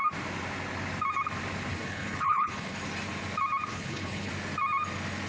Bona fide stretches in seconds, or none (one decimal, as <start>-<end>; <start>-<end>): 0.0-1.7; 2.8-3.7; 4.3-5.3